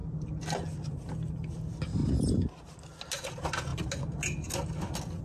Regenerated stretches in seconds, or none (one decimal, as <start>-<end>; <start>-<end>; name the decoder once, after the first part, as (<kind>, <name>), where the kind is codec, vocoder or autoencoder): none